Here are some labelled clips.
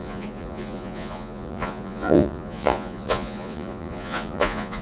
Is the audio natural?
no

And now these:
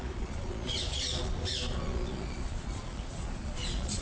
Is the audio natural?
no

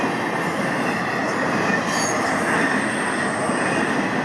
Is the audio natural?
yes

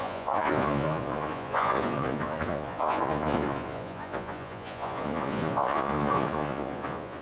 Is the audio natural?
no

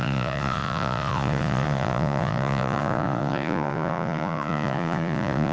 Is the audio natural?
no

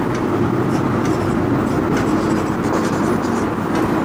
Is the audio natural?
yes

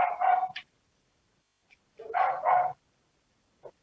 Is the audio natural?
yes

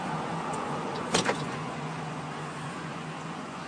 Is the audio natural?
no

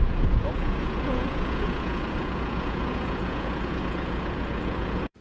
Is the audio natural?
no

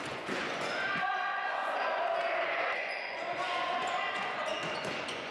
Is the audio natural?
no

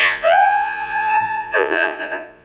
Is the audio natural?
no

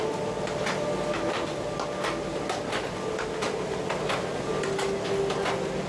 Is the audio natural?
yes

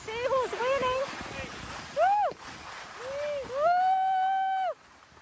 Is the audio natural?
yes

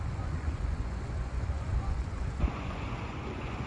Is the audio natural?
no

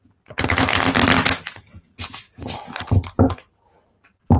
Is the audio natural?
yes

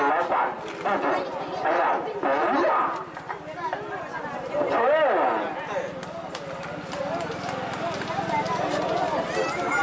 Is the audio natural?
yes